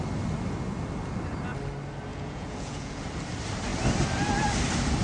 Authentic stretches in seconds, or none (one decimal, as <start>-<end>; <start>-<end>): 0.0-2.1; 3.0-5.0